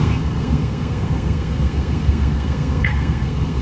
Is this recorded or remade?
remade